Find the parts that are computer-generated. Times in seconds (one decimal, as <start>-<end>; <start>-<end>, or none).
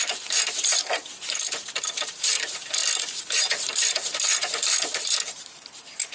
0.0-1.0; 1.9-2.8; 3.3-6.1